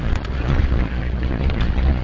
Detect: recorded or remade remade